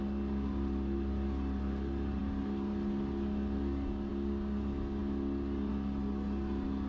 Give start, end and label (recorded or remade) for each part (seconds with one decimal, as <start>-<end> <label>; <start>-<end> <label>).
0.0-6.9 recorded